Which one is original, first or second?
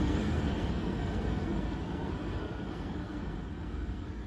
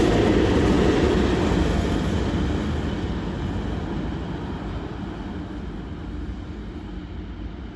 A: second